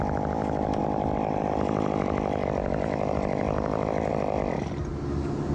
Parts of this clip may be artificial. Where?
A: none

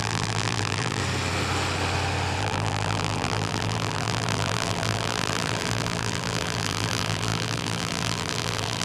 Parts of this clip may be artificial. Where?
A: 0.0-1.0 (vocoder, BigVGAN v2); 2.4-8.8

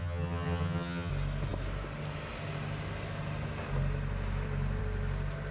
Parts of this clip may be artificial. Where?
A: 0.0-1.1 (vocoder, HiFi-GAN)

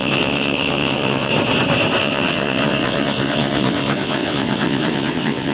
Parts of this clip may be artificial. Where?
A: 0.0-1.3 (vocoder, WaveNeXt); 2.0-5.5

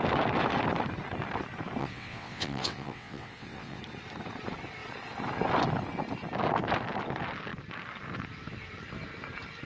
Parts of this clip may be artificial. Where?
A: 1.8-3.8 (vocoder, WaveNeXt)

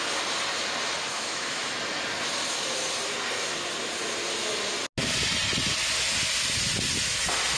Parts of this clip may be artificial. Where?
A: 1.1-1.7 (autoencoder, DAC-VAE)

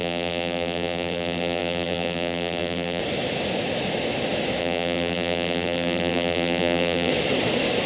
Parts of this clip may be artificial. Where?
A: 0.0-3.0 (vocoder, BigVGAN v2); 4.6-7.1